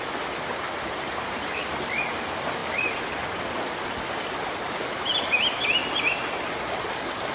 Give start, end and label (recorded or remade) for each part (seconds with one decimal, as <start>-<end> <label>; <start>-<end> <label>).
0.0-7.3 recorded